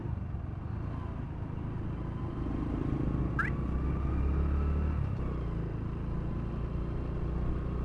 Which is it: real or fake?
real